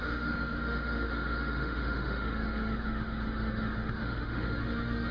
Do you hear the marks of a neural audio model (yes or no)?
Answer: yes